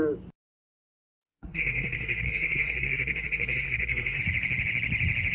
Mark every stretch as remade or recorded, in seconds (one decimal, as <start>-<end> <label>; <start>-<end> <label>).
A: 0.0-1.0 recorded; 1.0-4.2 remade; 4.2-5.3 recorded